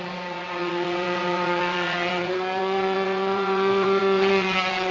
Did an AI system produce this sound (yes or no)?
yes